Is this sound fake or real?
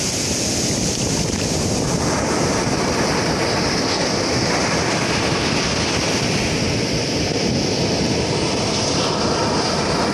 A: real